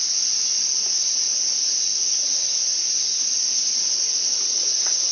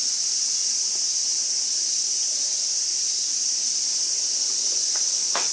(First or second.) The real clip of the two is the first